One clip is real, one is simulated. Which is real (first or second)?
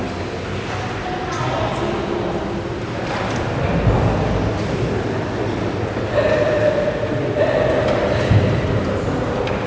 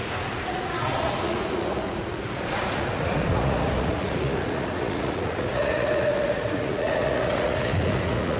first